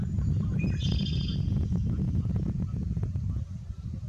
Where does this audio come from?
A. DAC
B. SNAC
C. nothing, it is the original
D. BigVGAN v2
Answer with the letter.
C